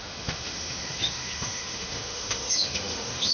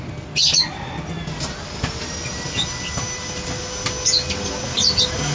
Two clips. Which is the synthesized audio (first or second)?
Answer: first